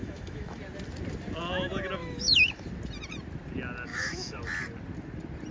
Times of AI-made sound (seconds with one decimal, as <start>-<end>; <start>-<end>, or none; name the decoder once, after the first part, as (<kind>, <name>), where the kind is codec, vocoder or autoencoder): 0.0-0.6 (autoencoder, DAC-VAE); 2.0-2.7; 3.9-4.4